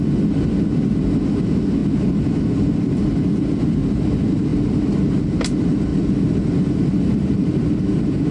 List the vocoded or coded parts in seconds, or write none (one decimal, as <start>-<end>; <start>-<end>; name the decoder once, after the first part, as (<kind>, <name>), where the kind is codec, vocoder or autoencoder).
5.9-7.6 (vocoder, BigVGAN v2)